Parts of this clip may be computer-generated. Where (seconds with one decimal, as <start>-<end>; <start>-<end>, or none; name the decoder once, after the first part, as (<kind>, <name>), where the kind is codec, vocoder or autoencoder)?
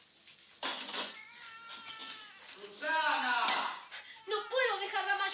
0.7-1.5 (vocoder, Vocos)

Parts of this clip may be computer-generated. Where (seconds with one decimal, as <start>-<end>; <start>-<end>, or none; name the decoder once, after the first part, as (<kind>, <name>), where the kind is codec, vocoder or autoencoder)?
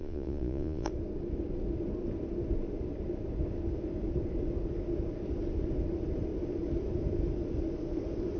0.0-0.9 (vocoder, Vocos)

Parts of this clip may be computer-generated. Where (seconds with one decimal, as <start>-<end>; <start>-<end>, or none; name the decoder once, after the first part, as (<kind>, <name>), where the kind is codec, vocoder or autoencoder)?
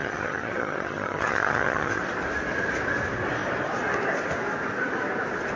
0.0-2.0 (vocoder, HiFi-GAN)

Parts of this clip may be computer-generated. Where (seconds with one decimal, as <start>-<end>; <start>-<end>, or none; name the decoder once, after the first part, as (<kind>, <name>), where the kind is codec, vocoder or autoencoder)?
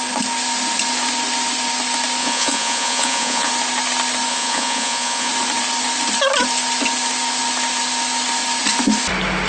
2.2-3.5 (vocoder, Vocos); 4.3-5.3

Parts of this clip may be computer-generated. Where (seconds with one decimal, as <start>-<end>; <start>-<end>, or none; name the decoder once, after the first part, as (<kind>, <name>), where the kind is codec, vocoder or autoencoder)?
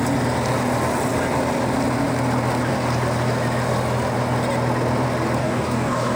5.4-6.2 (codec, DAC)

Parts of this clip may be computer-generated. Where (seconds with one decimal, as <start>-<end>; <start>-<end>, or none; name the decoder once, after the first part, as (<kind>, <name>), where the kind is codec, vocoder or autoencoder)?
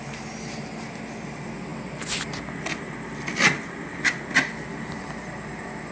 none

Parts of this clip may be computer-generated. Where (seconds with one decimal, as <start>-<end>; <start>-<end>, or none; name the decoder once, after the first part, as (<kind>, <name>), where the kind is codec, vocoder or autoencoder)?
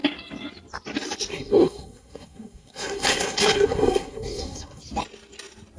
1.3-4.8 (codec, SNAC)